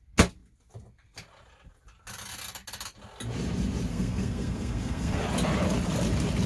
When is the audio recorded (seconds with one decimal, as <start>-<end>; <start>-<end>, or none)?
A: 0.0-3.9; 5.2-6.5